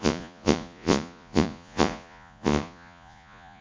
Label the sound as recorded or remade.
remade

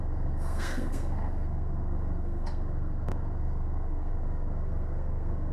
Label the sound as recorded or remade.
remade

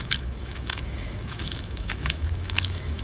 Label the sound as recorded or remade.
remade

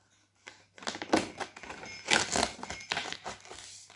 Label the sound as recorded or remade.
recorded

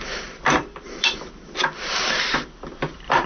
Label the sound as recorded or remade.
remade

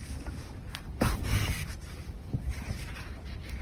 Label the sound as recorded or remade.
remade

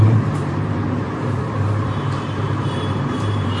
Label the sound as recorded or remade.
remade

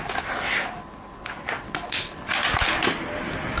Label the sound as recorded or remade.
recorded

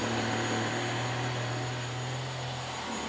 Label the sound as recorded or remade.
recorded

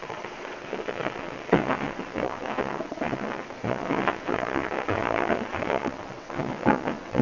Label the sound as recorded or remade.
remade